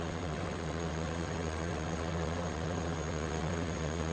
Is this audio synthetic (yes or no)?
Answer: yes